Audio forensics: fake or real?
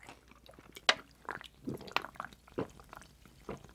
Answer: real